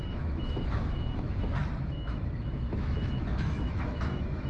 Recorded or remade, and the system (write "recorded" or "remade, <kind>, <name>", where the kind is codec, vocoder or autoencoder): remade, autoencoder, DAC-VAE